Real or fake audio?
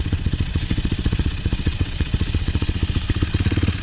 fake